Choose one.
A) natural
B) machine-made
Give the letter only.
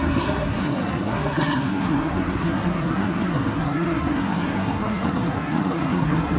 B